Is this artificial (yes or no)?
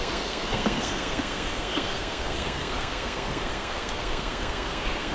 yes